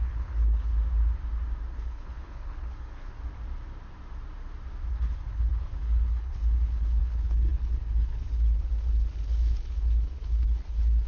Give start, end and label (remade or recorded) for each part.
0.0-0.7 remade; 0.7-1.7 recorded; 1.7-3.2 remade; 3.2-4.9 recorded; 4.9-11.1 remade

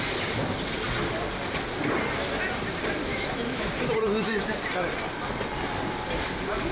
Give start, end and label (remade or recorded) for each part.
0.0-3.1 recorded; 3.1-3.7 remade; 3.7-6.7 recorded

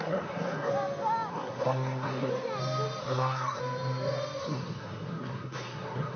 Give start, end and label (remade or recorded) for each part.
0.0-0.7 remade; 0.7-1.3 recorded; 1.3-2.3 remade; 2.3-3.0 recorded; 3.0-3.6 remade; 3.6-4.4 recorded; 4.4-6.2 remade